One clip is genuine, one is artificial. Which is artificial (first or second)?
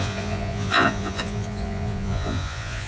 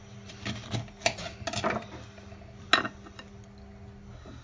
first